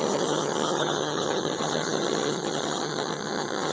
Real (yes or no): no